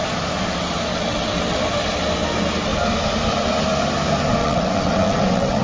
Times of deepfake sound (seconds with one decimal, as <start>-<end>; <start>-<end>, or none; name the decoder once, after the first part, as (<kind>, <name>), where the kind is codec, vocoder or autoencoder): 0.9-1.6 (vocoder, WaveNeXt); 4.4-5.6